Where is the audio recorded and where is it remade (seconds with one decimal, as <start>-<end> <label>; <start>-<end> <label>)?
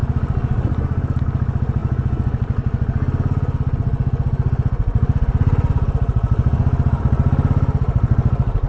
0.0-8.7 recorded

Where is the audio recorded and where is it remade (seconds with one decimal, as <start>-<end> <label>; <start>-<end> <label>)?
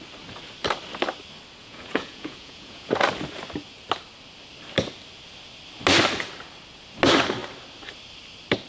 0.0-1.6 recorded; 1.6-2.9 remade; 2.9-8.7 recorded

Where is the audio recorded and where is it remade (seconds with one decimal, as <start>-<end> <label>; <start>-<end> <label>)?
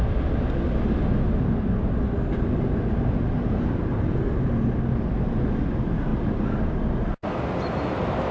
0.0-8.3 recorded